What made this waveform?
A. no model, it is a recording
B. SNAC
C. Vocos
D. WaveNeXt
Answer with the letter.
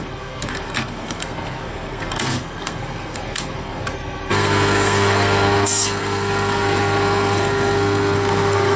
B